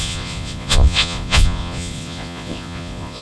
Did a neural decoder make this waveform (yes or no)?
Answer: yes